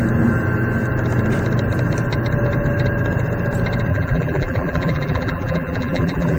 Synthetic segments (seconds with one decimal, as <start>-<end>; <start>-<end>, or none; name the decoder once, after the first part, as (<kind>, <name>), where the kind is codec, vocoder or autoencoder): 3.9-6.4 (vocoder, BigVGAN v2)